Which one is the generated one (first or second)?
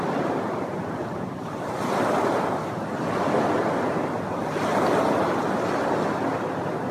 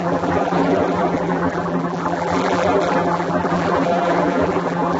second